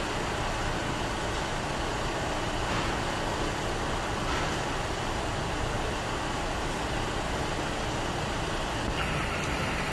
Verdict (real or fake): real